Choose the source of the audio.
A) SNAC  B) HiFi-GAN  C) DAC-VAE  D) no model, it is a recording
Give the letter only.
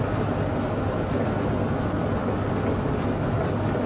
D